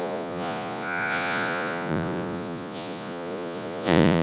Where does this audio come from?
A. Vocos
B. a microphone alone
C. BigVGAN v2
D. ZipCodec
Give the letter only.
A